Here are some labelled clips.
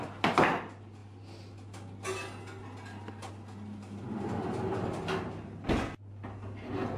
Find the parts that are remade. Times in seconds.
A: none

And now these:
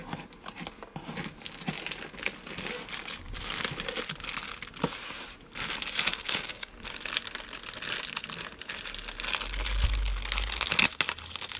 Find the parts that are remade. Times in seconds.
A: 6.1-6.7 (codec, DAC)

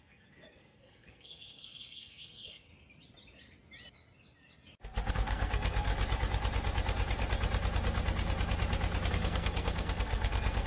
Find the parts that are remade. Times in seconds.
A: 0.0-2.7 (codec, SNAC); 5.1-5.9; 9.1-10.7

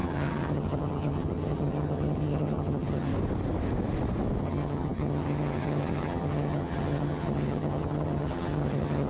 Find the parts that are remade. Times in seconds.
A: 0.0-3.1 (vocoder, HiFi-GAN); 4.4-9.1